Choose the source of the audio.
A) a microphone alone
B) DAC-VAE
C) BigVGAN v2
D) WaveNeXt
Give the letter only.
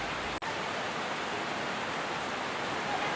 A